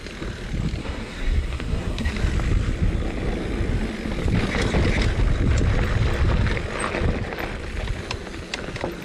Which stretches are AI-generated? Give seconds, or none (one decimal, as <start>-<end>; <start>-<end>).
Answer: 0.8-2.1